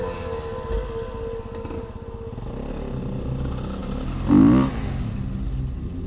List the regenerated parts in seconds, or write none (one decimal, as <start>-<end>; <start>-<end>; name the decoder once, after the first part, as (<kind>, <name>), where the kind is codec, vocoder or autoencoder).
none